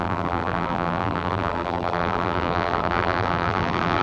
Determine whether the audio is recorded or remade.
remade